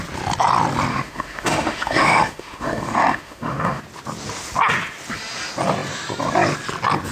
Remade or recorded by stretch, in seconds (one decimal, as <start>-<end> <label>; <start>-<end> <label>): 0.0-0.9 recorded; 0.9-3.8 remade; 3.8-7.1 recorded